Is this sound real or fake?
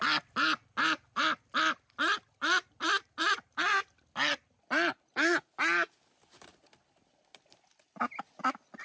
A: real